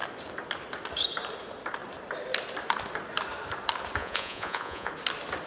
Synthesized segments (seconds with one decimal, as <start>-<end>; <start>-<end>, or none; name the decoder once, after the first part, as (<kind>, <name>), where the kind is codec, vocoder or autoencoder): 4.0-4.9 (vocoder, Vocos)

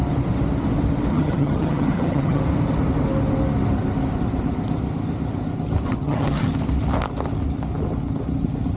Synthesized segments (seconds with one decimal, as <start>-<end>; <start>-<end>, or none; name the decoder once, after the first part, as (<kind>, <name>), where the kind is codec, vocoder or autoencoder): 1.1-2.4 (vocoder, HiFi-GAN); 5.9-6.5

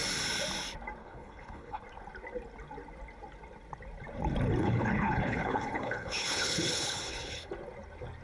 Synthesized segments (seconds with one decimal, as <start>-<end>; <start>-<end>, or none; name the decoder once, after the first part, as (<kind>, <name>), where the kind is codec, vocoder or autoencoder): 1.0-1.8 (codec, HILCodec); 4.6-7.5

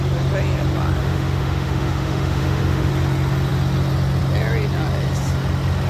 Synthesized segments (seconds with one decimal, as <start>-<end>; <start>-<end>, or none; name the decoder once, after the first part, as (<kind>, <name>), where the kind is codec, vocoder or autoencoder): 1.0-2.9 (autoencoder, DAC-VAE)

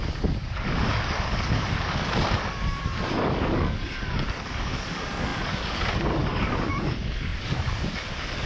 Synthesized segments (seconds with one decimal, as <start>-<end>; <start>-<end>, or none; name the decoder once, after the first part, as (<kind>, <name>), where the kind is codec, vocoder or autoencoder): 0.0-8.5 (codec, DAC)